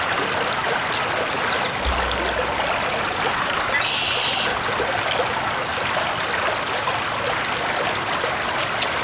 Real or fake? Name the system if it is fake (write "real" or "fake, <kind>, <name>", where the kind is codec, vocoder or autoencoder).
real